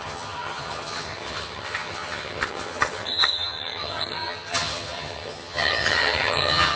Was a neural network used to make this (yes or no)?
yes